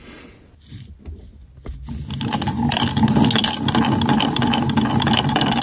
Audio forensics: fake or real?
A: real